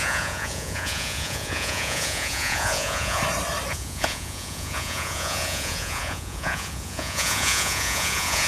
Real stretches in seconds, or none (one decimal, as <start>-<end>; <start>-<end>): 3.2-3.7